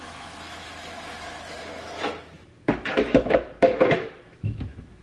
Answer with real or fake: fake